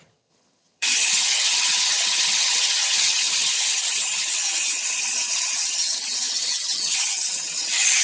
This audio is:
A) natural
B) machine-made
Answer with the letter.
B